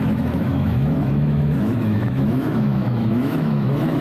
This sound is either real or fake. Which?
fake